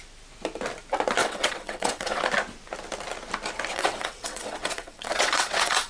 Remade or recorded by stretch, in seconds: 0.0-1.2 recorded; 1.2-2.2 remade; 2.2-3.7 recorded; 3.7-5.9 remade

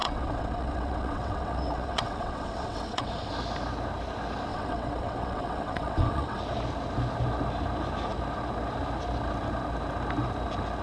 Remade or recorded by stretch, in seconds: 0.0-3.3 remade; 3.3-4.5 recorded; 4.5-6.4 remade; 6.4-10.8 recorded

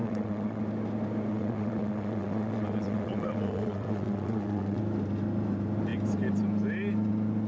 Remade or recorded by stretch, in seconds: 0.0-0.6 remade; 0.6-1.3 recorded; 1.3-4.8 remade; 4.8-7.5 recorded

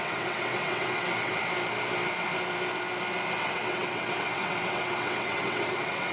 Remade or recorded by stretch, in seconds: 0.0-1.4 remade; 1.4-3.4 recorded; 3.4-6.1 remade